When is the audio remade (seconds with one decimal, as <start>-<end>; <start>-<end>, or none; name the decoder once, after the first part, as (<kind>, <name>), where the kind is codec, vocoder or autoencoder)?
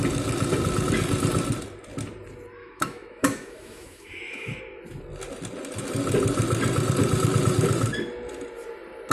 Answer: 2.6-4.6 (autoencoder, DAC-VAE)